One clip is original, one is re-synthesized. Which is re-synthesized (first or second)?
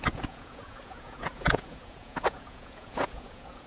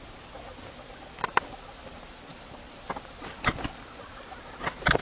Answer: first